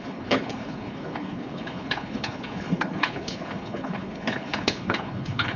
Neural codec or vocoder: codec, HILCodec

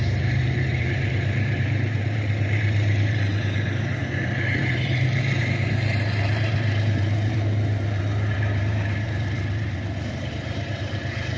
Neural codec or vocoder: vocoder, BigVGAN v2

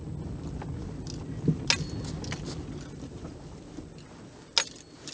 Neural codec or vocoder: none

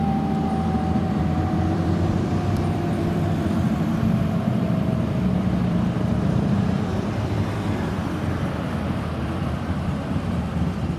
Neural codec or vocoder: vocoder, BigVGAN v2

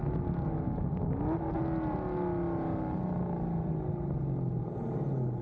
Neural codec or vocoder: none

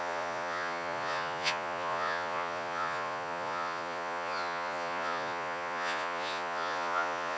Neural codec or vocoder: vocoder, Vocos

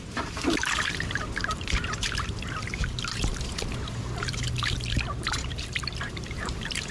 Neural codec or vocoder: vocoder, BigVGAN v2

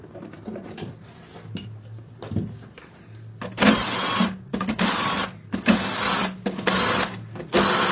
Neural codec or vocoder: none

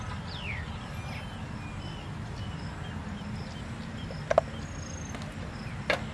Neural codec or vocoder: none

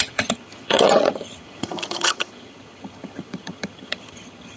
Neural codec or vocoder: vocoder, HiFi-GAN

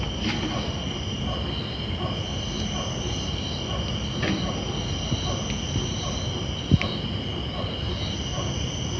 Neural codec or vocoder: none